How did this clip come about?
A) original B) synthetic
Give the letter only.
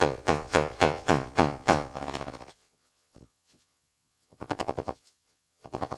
B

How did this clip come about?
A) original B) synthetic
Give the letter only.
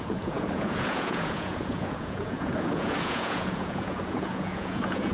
B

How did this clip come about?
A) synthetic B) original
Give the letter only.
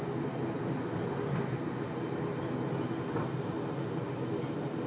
B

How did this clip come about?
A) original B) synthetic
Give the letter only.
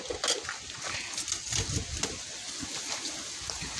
A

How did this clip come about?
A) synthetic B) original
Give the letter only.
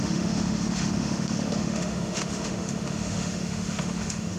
A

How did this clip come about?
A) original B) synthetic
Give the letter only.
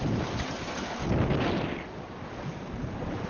A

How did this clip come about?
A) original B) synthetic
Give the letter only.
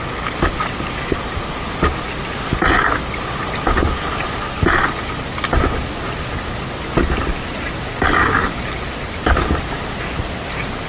A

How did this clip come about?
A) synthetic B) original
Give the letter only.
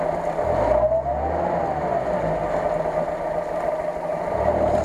B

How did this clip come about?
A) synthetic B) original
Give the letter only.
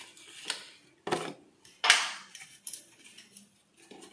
B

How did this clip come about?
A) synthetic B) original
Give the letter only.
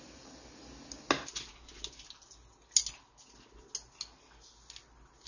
B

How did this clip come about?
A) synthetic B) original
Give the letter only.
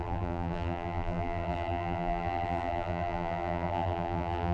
A